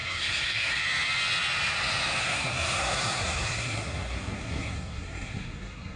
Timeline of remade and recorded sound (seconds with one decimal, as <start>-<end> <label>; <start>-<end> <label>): 0.0-0.8 remade; 0.8-2.2 recorded; 2.2-6.0 remade